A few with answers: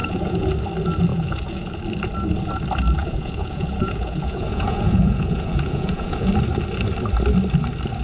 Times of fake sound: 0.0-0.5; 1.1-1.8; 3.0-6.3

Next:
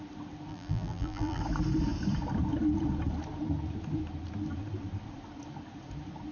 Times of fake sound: 0.5-1.4

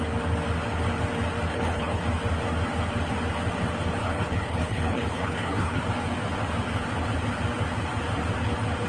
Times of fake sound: 1.5-2.0; 4.0-5.8

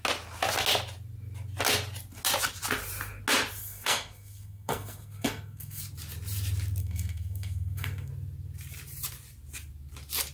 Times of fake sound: 3.6-5.8; 6.8-8.1

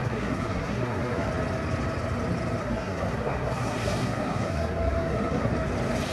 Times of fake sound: 0.0-1.3; 2.6-5.5

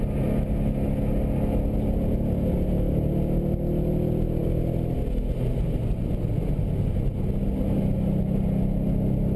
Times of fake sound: none

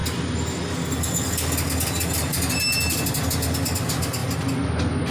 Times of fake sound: none

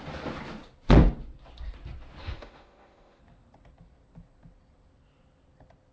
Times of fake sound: 2.2-3.2